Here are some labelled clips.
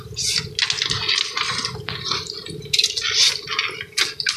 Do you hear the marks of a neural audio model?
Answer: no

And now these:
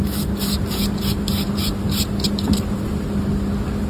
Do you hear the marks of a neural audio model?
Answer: no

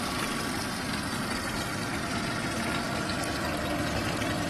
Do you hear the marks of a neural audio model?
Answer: no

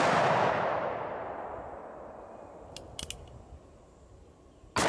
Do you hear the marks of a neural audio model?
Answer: no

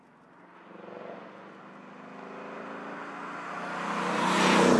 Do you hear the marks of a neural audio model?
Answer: no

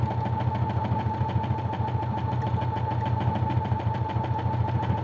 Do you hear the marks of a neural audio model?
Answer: no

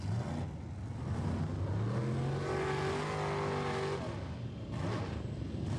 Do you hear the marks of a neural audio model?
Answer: no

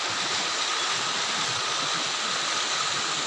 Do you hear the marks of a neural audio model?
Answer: no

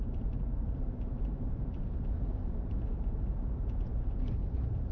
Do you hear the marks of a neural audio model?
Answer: yes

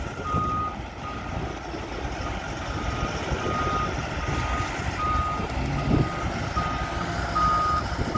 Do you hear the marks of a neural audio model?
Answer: no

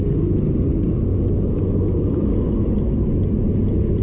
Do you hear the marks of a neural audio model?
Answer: no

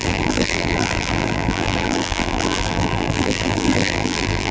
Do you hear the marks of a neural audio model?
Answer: yes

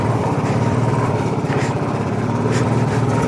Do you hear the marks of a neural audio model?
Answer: yes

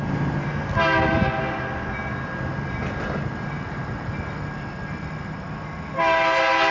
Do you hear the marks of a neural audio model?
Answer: no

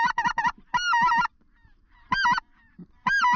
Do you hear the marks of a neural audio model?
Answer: no